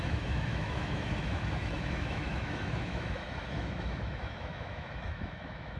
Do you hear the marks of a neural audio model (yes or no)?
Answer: yes